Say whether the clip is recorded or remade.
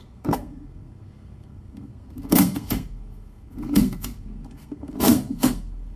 remade